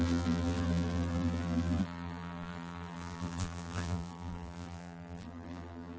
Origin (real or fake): fake